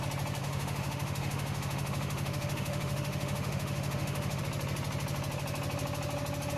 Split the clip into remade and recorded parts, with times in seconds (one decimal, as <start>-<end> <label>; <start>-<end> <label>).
0.0-0.4 recorded; 0.4-4.4 remade; 4.4-6.6 recorded